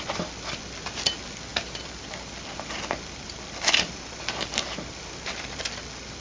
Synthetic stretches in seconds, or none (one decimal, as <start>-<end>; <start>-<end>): none